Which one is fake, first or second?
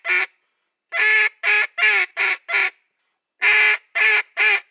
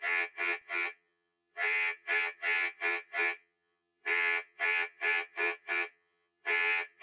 second